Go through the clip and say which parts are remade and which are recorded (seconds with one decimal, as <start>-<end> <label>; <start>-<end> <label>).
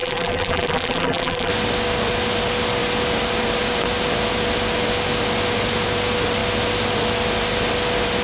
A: 0.0-1.5 remade; 1.5-8.2 recorded